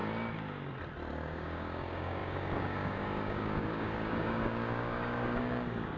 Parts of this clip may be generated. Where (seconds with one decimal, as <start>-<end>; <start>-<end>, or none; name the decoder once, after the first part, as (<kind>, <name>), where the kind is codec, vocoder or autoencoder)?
1.1-6.0 (codec, DAC)